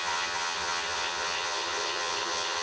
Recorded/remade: remade